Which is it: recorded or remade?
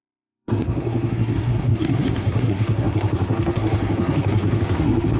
remade